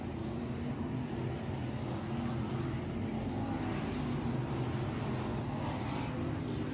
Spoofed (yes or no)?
no